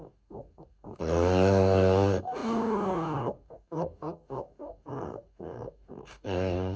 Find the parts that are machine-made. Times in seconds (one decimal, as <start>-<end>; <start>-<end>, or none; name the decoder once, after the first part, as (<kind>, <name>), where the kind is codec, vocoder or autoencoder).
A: 0.0-6.8 (codec, DAC)

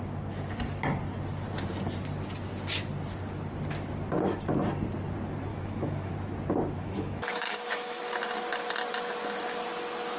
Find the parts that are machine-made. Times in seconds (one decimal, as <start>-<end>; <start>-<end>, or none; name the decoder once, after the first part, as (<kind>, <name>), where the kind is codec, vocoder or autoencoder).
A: 5.5-6.1 (autoencoder, DAC-VAE); 6.8-8.0

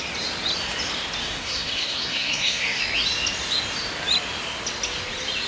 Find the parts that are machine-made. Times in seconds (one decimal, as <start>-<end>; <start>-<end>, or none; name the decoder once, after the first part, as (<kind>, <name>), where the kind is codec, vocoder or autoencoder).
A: 1.2-2.8 (codec, SNAC)